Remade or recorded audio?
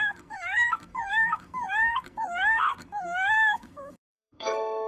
remade